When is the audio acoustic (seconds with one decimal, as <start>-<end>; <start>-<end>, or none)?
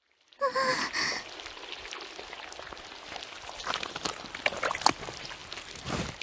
0.0-6.2